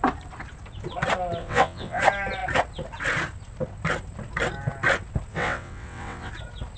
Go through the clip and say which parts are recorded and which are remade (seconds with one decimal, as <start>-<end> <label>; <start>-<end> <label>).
0.0-1.4 recorded; 1.4-2.0 remade; 2.0-5.3 recorded; 5.3-6.3 remade; 6.3-6.8 recorded